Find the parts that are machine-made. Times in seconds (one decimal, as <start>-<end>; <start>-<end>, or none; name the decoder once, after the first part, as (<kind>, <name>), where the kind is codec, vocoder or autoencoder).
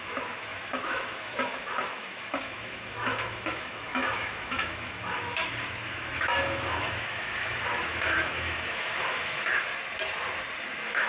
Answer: 0.0-9.7 (autoencoder, DAC-VAE); 10.7-11.1